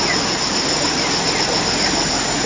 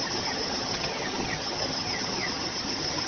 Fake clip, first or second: second